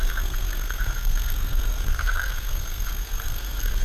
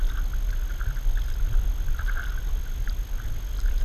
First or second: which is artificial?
first